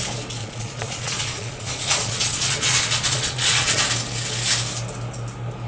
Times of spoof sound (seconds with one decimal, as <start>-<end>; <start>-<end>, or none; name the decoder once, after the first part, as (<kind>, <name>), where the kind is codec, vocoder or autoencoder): 0.4-3.8 (vocoder, Vocos)